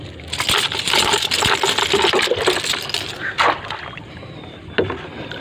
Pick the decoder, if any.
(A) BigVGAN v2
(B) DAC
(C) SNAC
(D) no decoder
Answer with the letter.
D